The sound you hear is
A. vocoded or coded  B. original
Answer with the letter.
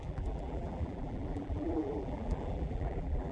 A